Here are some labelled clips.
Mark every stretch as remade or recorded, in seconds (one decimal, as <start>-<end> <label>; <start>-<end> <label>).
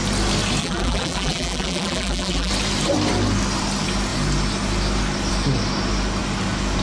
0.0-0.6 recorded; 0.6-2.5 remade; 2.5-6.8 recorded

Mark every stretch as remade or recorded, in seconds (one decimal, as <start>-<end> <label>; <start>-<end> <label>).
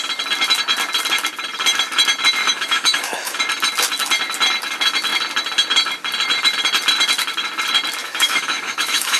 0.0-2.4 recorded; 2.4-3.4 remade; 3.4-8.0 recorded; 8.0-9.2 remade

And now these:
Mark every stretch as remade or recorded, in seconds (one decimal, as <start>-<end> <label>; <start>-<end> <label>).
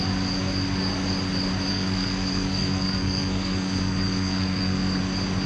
0.0-1.7 recorded; 1.7-5.0 remade; 5.0-5.5 recorded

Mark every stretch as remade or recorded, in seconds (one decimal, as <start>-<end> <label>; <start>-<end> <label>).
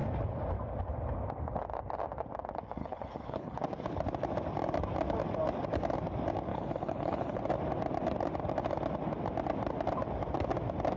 0.0-2.8 recorded; 2.8-3.6 remade; 3.6-6.5 recorded; 6.5-7.4 remade; 7.4-11.0 recorded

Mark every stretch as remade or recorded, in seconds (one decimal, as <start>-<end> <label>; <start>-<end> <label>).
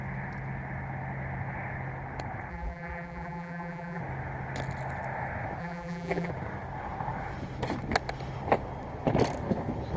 0.0-2.5 recorded; 2.5-4.0 remade; 4.0-5.6 recorded; 5.6-6.3 remade; 6.3-10.0 recorded